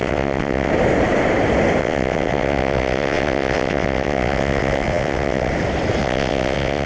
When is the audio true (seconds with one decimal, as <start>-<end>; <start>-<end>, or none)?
0.7-1.8; 5.5-6.0